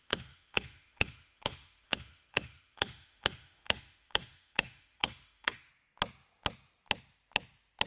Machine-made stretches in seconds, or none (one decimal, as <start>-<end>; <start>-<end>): 0.0-5.7